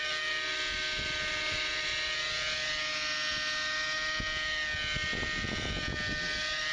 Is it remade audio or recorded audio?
recorded